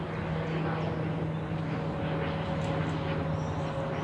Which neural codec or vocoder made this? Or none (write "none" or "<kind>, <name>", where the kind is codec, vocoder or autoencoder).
none